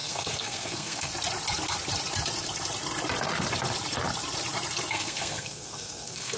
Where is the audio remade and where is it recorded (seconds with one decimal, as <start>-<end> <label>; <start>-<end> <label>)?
0.0-1.1 remade; 1.1-4.9 recorded; 4.9-6.4 remade